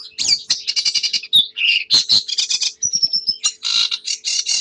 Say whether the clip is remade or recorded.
recorded